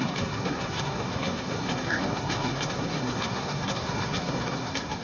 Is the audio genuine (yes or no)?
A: no